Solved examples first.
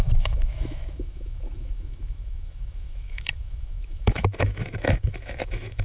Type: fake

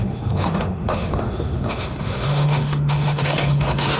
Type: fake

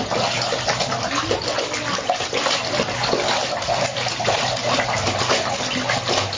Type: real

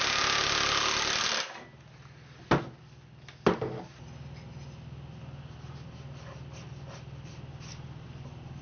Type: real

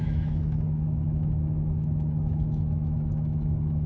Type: fake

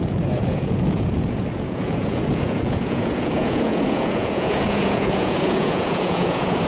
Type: fake